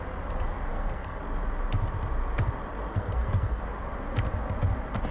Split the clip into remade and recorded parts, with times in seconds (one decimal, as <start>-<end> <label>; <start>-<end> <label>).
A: 0.0-0.7 recorded; 0.7-1.2 remade; 1.2-2.9 recorded; 2.9-3.6 remade; 3.6-5.1 recorded